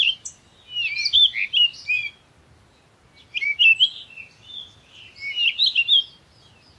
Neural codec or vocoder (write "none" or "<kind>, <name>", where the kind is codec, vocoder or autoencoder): none